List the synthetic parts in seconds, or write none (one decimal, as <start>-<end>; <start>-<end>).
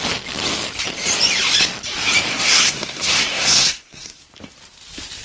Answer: 2.3-4.2